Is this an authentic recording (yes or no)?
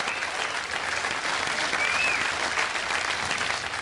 yes